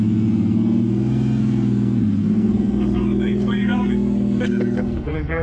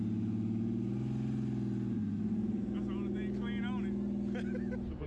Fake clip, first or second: first